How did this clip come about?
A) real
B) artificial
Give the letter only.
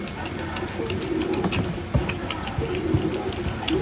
A